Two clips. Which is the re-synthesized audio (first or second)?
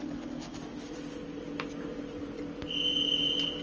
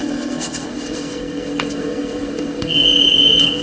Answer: second